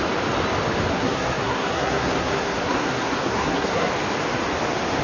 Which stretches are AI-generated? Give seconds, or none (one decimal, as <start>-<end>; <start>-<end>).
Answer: 0.9-3.9